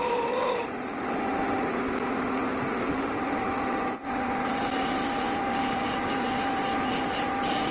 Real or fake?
real